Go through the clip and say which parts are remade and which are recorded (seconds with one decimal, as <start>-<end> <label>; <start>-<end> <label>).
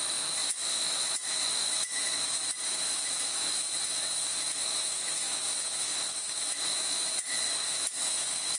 0.0-8.6 remade